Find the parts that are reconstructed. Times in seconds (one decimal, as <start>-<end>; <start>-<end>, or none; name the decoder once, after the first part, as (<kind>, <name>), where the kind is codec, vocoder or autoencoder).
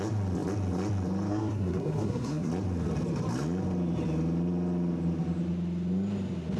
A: 1.3-2.5 (codec, SNAC)